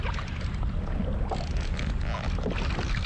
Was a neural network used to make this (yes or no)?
no